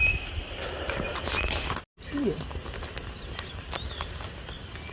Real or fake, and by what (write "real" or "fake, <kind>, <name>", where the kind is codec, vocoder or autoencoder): real